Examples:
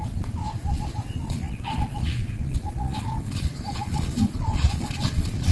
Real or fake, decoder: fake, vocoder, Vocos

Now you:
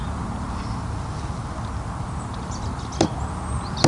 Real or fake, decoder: real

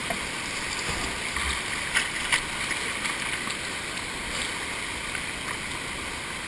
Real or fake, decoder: real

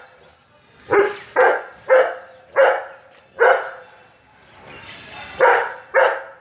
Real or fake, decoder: real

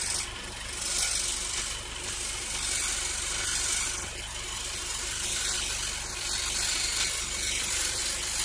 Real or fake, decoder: real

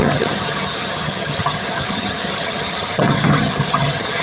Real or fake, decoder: fake, vocoder, HiFi-GAN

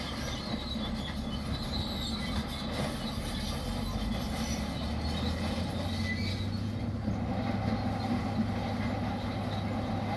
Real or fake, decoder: real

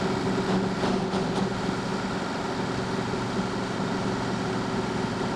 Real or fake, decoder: real